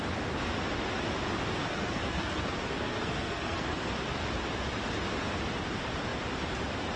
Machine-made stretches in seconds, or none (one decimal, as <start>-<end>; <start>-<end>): 1.6-3.9